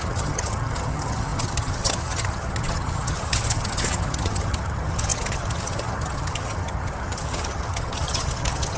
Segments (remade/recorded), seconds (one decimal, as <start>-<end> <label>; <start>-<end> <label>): 0.0-8.8 remade